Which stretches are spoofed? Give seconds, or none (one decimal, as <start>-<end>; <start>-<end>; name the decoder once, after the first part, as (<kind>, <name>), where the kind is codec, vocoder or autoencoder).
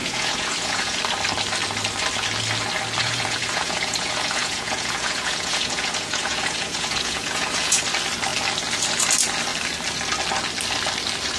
0.0-1.0 (vocoder, Vocos); 3.0-7.8